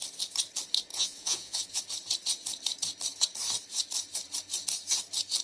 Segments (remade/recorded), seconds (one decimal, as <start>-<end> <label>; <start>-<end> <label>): 0.0-0.9 recorded; 0.9-1.8 remade; 1.8-5.4 recorded